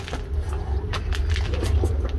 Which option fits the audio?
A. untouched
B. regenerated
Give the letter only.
A